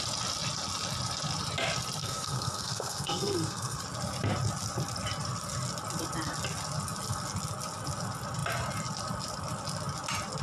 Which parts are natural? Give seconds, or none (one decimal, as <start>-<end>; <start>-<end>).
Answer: 0.0-2.0; 3.8-10.4